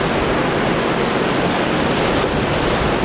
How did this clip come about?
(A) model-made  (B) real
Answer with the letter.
B